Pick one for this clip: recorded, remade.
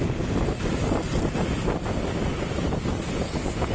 recorded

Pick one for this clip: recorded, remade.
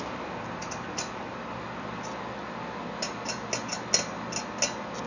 recorded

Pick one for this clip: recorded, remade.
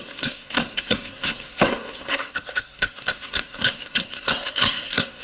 remade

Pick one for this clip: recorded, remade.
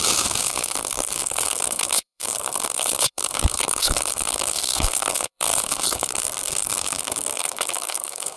remade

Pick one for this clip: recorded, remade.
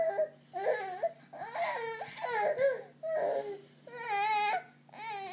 recorded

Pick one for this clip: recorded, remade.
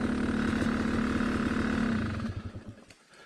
recorded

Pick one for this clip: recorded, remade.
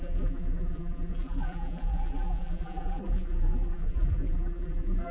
remade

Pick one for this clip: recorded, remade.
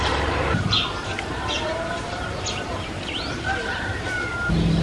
remade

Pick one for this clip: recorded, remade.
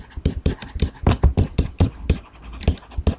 recorded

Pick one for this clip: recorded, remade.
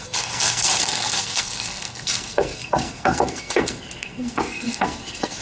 remade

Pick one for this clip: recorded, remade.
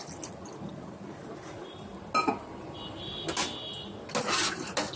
recorded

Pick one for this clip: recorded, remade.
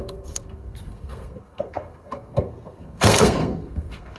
remade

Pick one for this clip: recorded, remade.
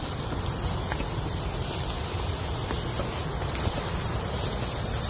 recorded